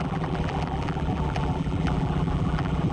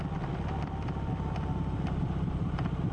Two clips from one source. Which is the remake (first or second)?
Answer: first